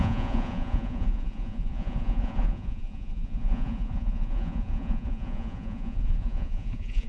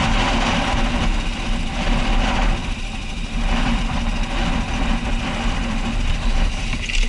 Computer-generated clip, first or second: first